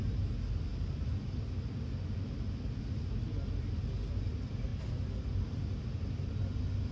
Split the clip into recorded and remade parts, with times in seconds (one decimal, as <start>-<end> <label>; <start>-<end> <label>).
0.0-6.9 recorded